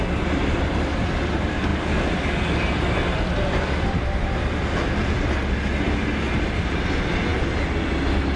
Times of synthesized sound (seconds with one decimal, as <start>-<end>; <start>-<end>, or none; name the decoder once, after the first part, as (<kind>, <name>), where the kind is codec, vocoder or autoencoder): none